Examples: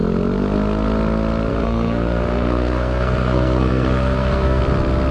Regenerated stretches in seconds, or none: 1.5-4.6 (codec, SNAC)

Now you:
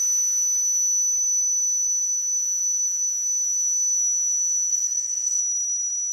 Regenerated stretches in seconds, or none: 4.7-5.4 (codec, SNAC)

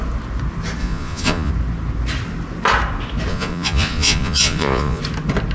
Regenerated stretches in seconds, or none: 0.8-1.5 (vocoder, Vocos); 3.3-5.0

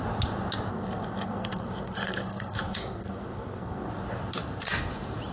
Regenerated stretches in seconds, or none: 0.7-3.9 (codec, SNAC)

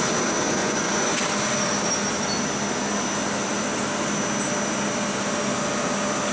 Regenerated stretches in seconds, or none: 0.6-1.2 (vocoder, Vocos)